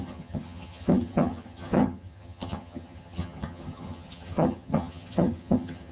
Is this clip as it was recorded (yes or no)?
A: no